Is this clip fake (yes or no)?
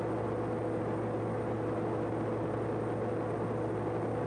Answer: no